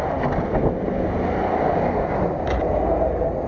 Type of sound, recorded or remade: recorded